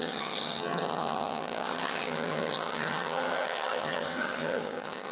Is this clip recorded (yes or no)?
no